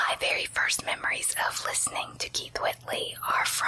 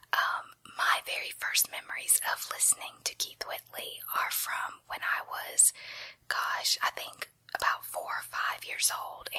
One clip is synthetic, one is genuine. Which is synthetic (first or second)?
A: first